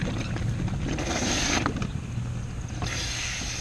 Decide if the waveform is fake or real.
real